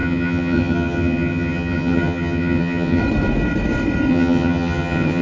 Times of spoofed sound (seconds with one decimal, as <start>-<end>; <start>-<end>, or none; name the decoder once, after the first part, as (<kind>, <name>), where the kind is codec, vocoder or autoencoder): 0.0-3.0 (vocoder, HiFi-GAN); 4.1-5.2